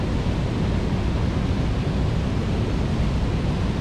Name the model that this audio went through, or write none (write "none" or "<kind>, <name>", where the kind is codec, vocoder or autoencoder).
none